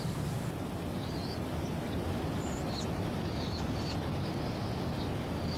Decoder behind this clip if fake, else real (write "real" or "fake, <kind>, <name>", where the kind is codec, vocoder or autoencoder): real